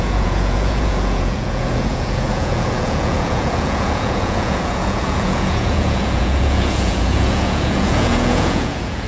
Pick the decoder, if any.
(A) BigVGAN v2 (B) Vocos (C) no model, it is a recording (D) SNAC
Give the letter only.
B